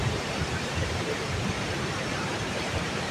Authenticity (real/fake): fake